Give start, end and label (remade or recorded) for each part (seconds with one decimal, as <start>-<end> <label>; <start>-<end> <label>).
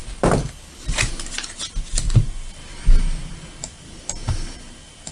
0.0-5.1 recorded